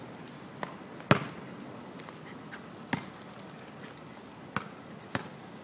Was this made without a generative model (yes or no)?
yes